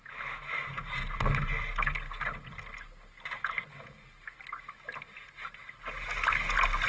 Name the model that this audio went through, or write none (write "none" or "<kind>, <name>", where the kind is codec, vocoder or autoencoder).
none